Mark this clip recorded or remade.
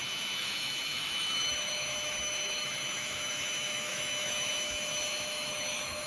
remade